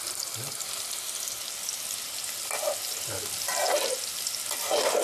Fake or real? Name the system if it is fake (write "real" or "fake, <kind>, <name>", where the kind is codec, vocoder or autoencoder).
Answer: real